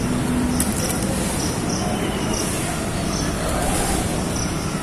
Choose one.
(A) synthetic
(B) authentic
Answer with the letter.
B